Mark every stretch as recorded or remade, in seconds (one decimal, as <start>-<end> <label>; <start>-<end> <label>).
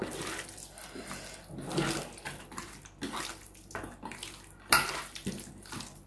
0.0-6.1 recorded